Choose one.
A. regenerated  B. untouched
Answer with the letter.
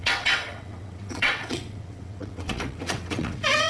A